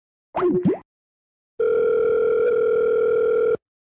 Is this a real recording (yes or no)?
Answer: yes